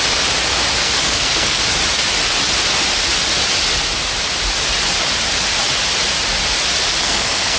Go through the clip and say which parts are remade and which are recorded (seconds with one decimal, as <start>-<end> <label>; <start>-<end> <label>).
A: 0.0-0.8 recorded; 0.8-1.6 remade; 1.6-7.0 recorded; 7.0-7.6 remade